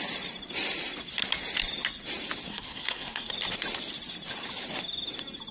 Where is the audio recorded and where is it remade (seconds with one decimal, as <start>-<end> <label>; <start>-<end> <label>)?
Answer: 0.0-2.5 recorded; 2.5-3.3 remade; 3.3-5.5 recorded